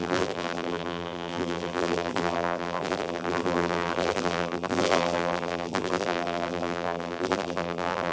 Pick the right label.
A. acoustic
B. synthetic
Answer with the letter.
B